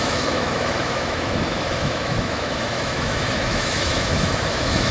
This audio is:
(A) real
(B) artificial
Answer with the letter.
B